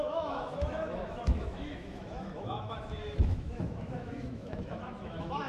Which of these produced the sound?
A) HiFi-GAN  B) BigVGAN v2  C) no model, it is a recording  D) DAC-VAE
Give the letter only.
D